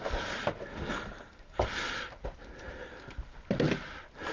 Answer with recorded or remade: recorded